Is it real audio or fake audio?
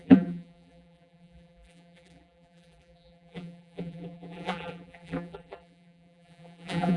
fake